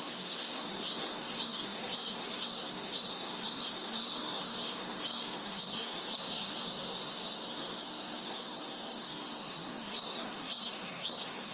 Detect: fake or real fake